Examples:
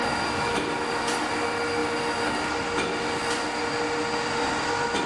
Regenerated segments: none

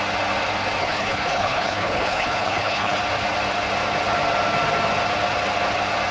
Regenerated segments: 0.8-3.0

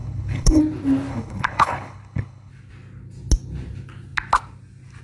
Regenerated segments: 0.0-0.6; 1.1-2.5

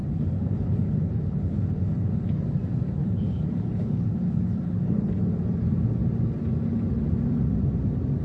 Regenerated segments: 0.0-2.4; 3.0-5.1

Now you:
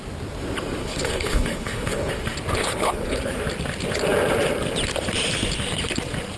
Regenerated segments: 0.8-2.1; 2.6-3.4